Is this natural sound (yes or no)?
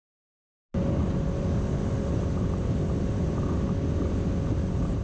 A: yes